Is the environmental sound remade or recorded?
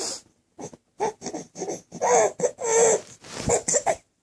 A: recorded